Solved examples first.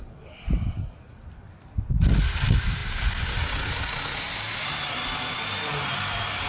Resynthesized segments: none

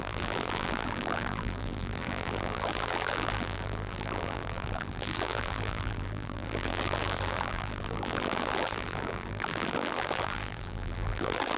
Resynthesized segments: 0.0-11.6 (vocoder, BigVGAN v2)

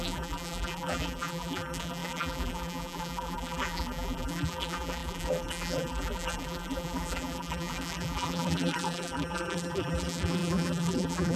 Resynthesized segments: 0.0-11.4 (vocoder, BigVGAN v2)